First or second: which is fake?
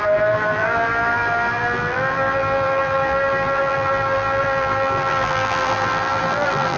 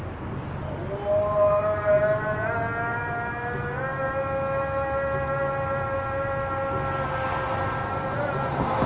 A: first